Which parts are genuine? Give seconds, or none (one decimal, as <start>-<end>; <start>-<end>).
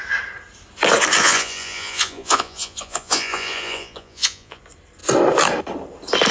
0.0-1.2; 4.6-6.3